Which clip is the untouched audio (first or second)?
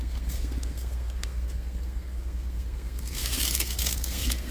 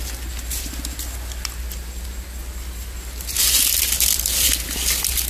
second